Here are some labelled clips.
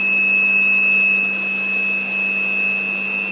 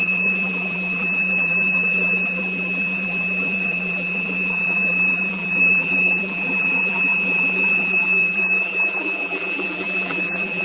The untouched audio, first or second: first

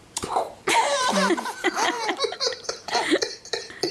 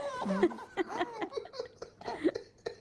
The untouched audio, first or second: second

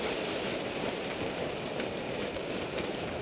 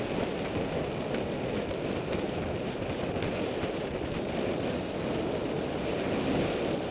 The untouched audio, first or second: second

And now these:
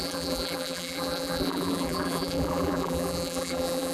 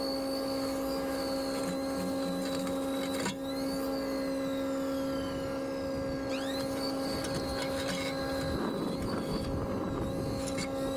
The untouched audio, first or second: second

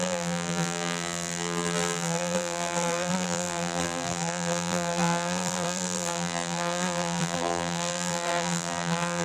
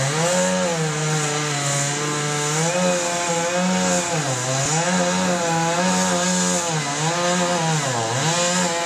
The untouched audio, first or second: second